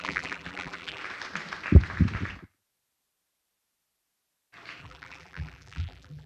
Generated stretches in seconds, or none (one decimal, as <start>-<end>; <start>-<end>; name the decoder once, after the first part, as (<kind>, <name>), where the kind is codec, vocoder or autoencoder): 0.0-1.0 (vocoder, BigVGAN v2); 4.8-6.3